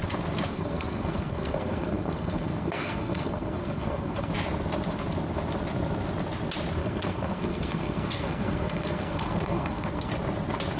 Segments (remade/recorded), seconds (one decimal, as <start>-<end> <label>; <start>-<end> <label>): 0.0-0.5 recorded; 0.5-4.3 remade; 4.3-6.8 recorded; 6.8-10.1 remade; 10.1-10.8 recorded